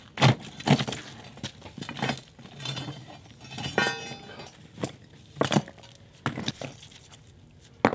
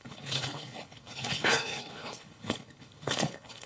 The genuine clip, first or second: first